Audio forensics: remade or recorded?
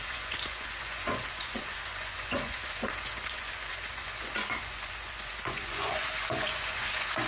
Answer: remade